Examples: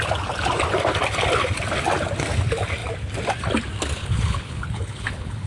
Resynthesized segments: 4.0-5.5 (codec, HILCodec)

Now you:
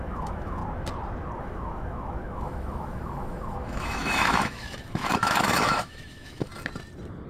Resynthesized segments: 0.0-0.6 (autoencoder, DAC-VAE); 1.4-6.5

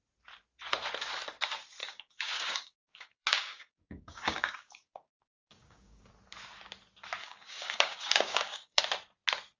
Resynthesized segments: 1.8-6.1 (codec, DAC); 7.2-8.8